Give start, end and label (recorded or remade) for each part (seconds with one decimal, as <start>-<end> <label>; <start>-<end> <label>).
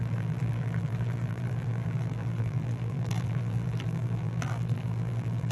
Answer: 0.0-5.5 remade